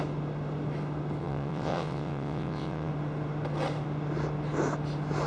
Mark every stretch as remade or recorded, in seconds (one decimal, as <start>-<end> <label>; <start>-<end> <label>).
0.0-1.2 recorded; 1.2-2.9 remade; 2.9-5.3 recorded